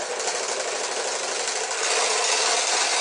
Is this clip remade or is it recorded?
recorded